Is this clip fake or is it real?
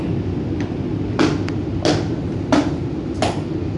real